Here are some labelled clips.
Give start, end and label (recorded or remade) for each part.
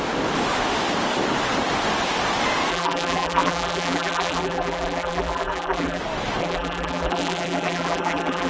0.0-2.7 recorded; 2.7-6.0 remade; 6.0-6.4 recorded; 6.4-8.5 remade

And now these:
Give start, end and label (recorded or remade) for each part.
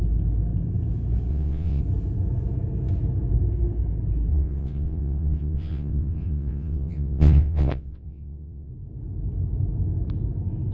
0.0-1.3 recorded; 1.3-1.8 remade; 1.8-4.3 recorded; 4.3-8.7 remade; 8.7-10.7 recorded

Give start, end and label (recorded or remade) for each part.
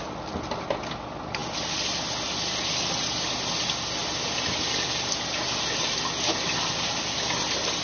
0.0-7.8 recorded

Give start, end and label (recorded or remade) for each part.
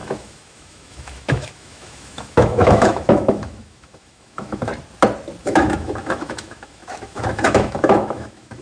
0.0-4.7 remade; 4.7-5.4 recorded; 5.4-8.6 remade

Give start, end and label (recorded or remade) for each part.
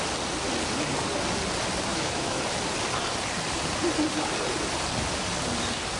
0.0-1.9 recorded; 1.9-2.4 remade; 2.4-6.0 recorded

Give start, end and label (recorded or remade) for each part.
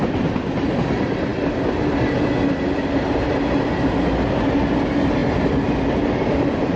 0.0-6.8 recorded